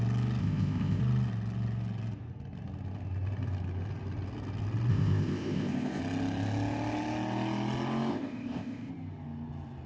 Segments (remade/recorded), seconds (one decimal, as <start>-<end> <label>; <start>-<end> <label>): 0.0-0.4 recorded; 0.4-1.0 remade; 1.0-4.9 recorded; 4.9-6.0 remade; 6.0-8.1 recorded; 8.1-8.9 remade; 8.9-9.9 recorded